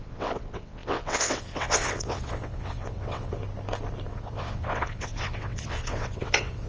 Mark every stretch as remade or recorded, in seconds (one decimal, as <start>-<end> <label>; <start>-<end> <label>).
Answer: 0.0-3.4 remade; 3.4-4.1 recorded; 4.1-6.7 remade